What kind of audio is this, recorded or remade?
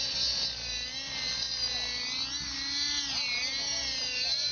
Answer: recorded